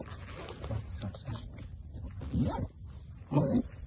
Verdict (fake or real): real